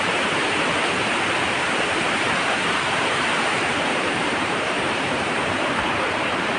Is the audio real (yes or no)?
no